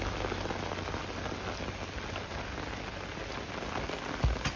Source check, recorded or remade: recorded